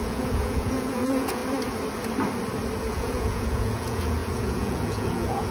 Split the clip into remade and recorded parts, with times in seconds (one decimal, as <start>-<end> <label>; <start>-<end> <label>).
0.0-1.4 remade; 1.4-2.8 recorded; 2.8-5.5 remade